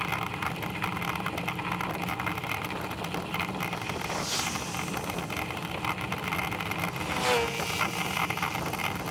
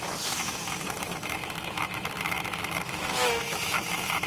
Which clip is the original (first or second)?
first